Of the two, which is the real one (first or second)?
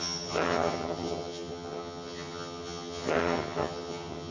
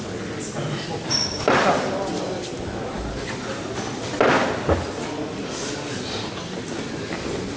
second